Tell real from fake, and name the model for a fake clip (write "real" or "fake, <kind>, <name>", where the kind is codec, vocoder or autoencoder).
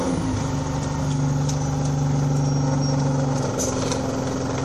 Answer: real